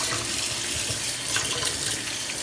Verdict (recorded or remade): recorded